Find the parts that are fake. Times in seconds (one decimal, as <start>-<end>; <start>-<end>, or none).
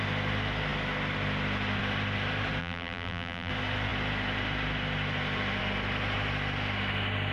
2.6-3.5